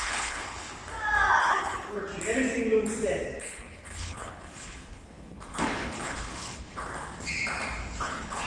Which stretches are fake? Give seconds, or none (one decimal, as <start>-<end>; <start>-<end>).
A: 0.0-0.8; 1.4-2.1; 3.4-6.9; 8.0-8.5